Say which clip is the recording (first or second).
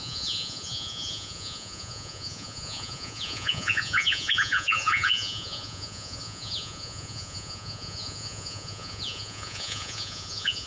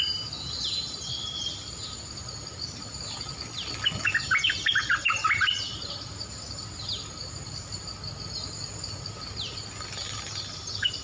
second